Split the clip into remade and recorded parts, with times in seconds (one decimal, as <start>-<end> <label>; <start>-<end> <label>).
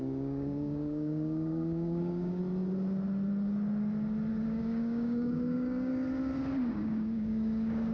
0.0-2.4 remade; 2.4-4.3 recorded; 4.3-5.9 remade; 5.9-6.7 recorded; 6.7-7.9 remade